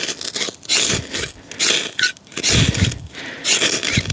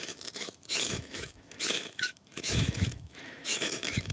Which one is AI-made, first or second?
second